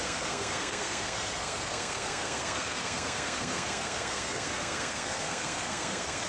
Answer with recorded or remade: remade